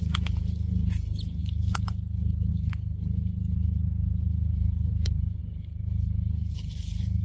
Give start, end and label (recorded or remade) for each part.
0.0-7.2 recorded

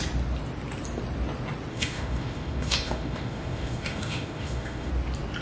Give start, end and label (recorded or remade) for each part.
0.0-1.7 recorded; 1.7-4.9 remade; 4.9-5.4 recorded

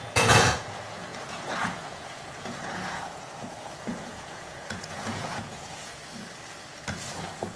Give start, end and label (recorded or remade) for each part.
0.0-6.0 remade; 6.0-7.1 recorded; 7.1-7.6 remade

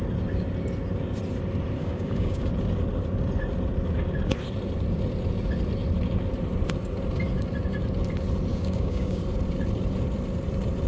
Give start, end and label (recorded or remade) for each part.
0.0-1.8 recorded; 1.8-2.5 remade; 2.5-8.5 recorded; 8.5-9.2 remade; 9.2-10.9 recorded